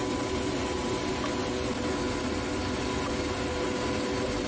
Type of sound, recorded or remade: recorded